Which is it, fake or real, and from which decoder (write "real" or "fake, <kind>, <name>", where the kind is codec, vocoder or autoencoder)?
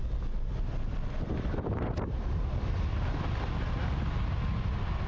real